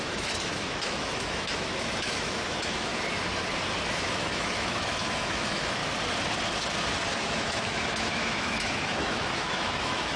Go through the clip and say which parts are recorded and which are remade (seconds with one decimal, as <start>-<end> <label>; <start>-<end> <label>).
0.0-2.9 remade; 2.9-3.9 recorded; 3.9-5.8 remade; 5.8-7.1 recorded; 7.1-10.2 remade